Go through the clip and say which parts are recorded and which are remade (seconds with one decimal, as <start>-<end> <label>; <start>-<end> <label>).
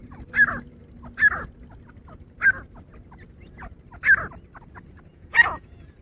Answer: 0.0-5.1 recorded; 5.1-6.0 remade